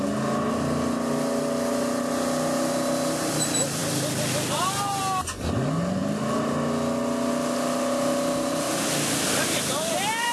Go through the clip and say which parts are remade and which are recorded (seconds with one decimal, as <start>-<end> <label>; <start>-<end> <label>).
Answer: 0.0-10.3 recorded

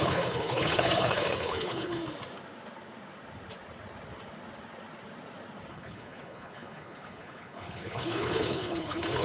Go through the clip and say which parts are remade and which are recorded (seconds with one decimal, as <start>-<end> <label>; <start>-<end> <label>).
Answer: 0.0-2.0 remade; 2.0-5.7 recorded; 5.7-9.2 remade

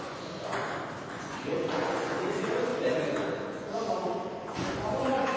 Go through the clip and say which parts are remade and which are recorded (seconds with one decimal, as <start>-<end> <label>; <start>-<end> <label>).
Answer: 0.0-0.6 remade; 0.6-1.1 recorded; 1.1-5.4 remade

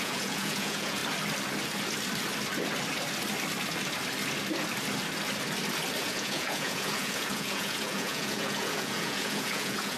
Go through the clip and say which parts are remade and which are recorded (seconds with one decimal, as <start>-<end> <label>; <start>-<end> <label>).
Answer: 0.0-1.0 remade; 1.0-6.0 recorded; 6.0-10.0 remade

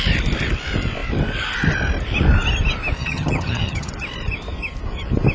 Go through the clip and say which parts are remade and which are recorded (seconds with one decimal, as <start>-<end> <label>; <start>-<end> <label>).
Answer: 0.0-3.0 recorded; 3.0-3.9 remade; 3.9-5.3 recorded